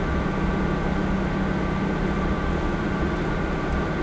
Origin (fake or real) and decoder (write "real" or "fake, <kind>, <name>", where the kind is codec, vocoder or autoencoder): real